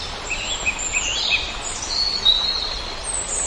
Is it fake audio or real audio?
real